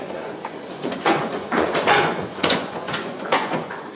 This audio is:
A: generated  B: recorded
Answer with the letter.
A